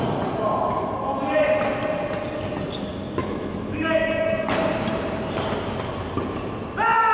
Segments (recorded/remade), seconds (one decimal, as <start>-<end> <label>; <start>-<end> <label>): 0.0-3.2 recorded; 3.2-3.9 remade; 3.9-7.1 recorded